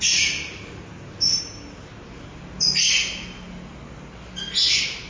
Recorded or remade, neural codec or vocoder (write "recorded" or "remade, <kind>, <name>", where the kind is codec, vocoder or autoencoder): recorded